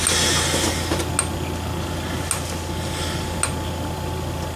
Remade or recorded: recorded